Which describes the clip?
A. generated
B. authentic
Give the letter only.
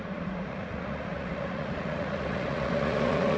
A